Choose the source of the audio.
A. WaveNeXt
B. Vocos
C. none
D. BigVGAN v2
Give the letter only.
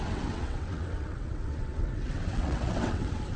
A